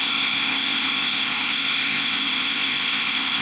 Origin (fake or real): fake